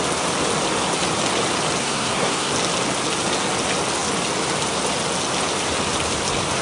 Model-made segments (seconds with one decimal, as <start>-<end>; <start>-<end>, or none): 1.8-2.5